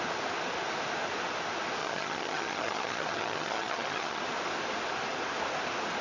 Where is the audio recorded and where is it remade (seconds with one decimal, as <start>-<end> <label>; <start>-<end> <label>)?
0.0-1.8 recorded; 1.8-4.2 remade; 4.2-6.0 recorded